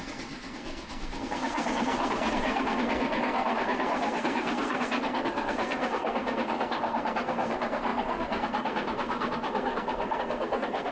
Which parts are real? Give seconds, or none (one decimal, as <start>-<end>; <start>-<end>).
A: none